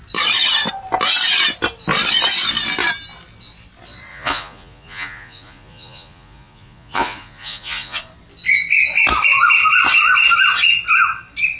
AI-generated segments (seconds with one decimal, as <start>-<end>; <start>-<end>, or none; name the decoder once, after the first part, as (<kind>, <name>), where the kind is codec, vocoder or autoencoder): 4.1-8.0 (vocoder, Vocos)